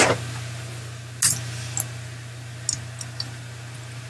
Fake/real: real